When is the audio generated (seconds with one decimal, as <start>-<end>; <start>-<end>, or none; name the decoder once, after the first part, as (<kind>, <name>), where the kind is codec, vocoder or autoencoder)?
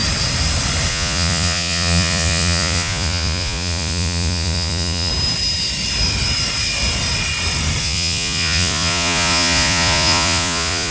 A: 0.9-5.1 (vocoder, Vocos); 7.8-10.9